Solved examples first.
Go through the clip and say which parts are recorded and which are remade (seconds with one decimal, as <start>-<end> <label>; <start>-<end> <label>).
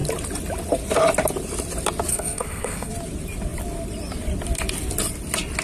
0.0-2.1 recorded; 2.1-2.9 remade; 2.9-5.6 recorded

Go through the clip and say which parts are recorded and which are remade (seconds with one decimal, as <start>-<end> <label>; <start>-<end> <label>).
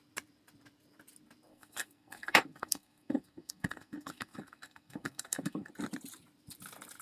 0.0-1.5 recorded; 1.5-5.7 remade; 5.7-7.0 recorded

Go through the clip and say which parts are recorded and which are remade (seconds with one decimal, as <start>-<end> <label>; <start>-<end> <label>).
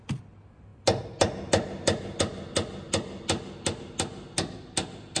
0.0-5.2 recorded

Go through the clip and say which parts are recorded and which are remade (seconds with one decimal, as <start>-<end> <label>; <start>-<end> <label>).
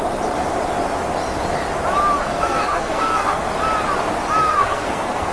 0.0-2.2 recorded; 2.2-3.4 remade; 3.4-4.4 recorded; 4.4-5.3 remade